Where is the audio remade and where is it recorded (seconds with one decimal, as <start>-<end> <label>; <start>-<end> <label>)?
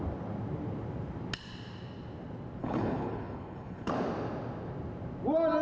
0.0-2.6 recorded; 2.6-3.9 remade; 3.9-5.6 recorded